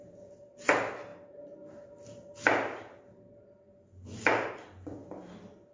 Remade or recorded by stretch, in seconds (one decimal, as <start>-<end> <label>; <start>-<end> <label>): 0.0-5.7 recorded